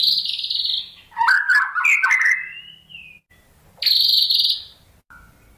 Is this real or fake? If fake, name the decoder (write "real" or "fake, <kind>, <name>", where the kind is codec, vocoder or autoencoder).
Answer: real